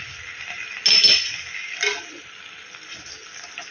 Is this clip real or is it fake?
real